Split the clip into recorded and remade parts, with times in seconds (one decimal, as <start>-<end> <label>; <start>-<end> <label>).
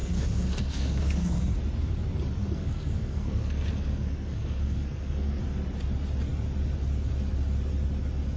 0.0-1.4 remade; 1.4-2.4 recorded; 2.4-5.4 remade; 5.4-8.4 recorded